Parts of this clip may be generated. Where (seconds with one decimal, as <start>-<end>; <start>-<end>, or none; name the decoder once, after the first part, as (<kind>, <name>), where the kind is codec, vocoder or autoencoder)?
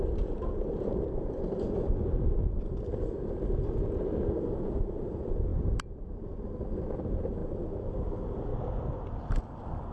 0.0-8.5 (vocoder, BigVGAN v2); 9.3-9.9